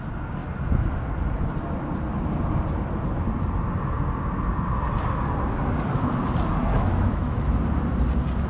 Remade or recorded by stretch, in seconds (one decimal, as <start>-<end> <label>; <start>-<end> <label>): 0.0-6.7 recorded; 6.7-7.4 remade; 7.4-8.5 recorded